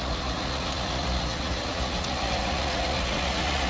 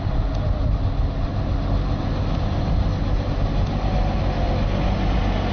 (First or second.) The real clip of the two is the second